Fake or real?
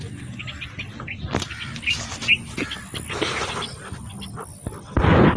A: real